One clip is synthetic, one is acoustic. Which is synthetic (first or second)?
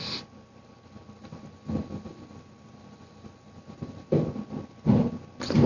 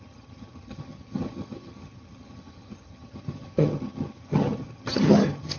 second